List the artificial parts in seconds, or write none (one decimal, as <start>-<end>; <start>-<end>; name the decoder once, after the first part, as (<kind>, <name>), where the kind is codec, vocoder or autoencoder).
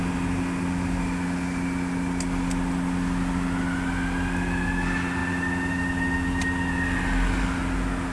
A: none